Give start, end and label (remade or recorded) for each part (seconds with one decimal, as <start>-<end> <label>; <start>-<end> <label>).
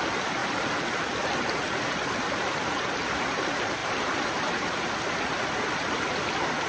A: 0.0-3.8 recorded; 3.8-4.8 remade; 4.8-6.7 recorded